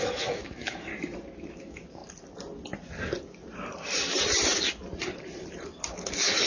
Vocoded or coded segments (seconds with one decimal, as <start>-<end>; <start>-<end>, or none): 0.0-0.9; 1.5-2.0; 5.9-6.5